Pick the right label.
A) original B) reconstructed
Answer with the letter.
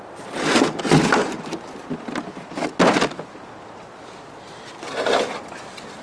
A